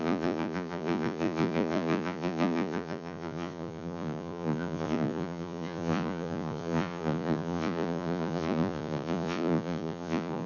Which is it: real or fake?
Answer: fake